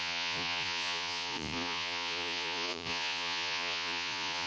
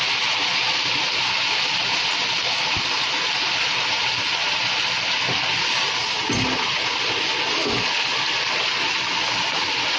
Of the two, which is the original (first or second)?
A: second